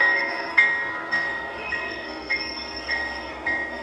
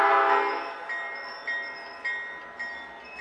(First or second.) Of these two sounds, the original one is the second